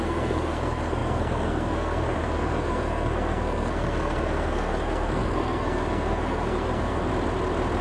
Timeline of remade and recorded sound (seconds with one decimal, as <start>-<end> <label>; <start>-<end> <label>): 0.0-7.1 remade; 7.1-7.8 recorded